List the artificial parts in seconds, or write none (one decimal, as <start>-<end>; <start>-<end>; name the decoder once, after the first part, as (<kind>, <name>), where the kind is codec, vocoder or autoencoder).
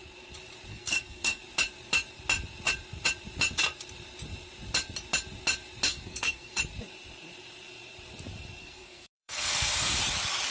0.7-1.4 (codec, SNAC); 5.9-6.6; 8.6-10.0